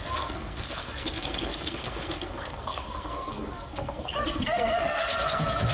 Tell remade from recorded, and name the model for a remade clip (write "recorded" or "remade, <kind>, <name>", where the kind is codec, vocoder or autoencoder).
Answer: remade, codec, SNAC